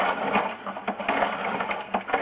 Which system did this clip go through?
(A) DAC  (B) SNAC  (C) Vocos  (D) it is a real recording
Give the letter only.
D